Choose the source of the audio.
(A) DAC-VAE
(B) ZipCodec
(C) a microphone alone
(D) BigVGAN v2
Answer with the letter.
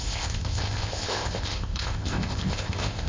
B